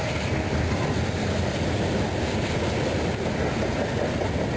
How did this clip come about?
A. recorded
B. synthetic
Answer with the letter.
A